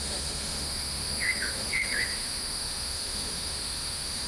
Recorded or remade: remade